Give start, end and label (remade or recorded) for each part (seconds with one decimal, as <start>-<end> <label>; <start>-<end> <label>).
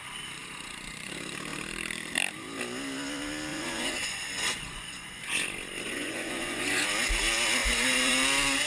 0.0-0.4 recorded; 0.4-1.1 remade; 1.1-3.5 recorded; 3.5-6.9 remade; 6.9-7.6 recorded; 7.6-8.1 remade; 8.1-8.7 recorded